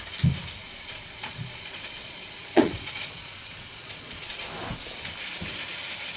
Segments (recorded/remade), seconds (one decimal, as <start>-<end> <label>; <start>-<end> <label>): 0.0-0.6 recorded; 0.6-4.3 remade; 4.3-6.2 recorded